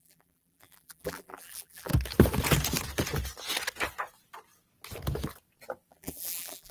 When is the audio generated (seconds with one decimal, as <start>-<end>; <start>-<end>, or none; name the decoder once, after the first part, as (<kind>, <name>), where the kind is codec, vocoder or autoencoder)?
0.0-1.9 (vocoder, BigVGAN v2); 5.9-6.7